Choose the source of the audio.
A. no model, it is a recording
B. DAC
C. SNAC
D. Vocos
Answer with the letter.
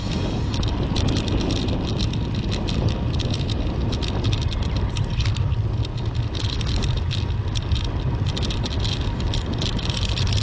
A